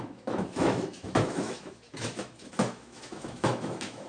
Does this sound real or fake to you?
fake